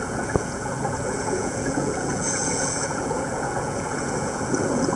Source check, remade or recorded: remade